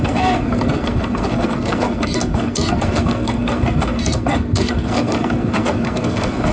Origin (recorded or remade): remade